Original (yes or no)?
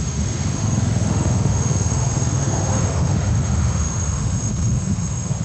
no